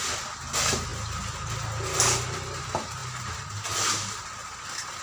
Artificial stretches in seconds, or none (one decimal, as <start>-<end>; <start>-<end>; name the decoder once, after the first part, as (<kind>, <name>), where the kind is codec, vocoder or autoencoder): none